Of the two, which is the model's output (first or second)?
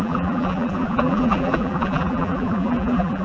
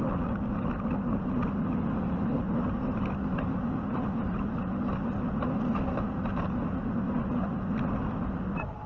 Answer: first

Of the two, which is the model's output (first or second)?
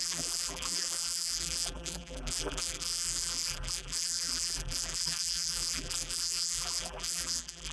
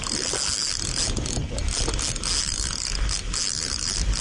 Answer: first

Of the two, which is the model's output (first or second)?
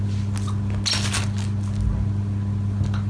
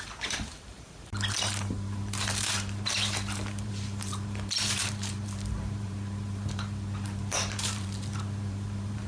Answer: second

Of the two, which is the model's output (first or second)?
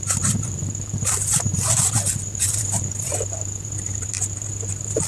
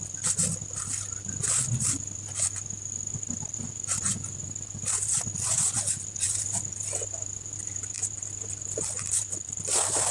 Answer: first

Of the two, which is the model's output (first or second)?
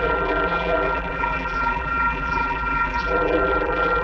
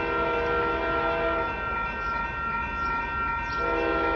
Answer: first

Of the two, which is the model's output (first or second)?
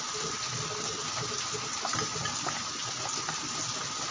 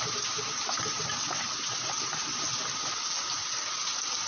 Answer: second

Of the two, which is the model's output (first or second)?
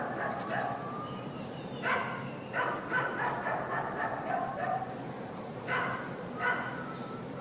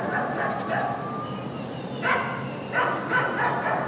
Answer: first